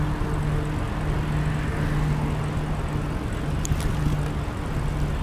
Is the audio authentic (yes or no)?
yes